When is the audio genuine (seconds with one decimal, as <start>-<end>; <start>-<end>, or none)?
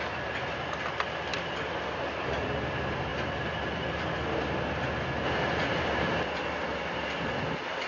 0.0-7.9